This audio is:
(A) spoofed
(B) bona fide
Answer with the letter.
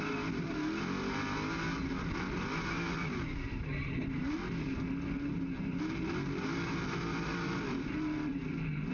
B